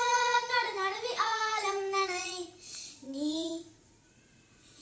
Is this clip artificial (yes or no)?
yes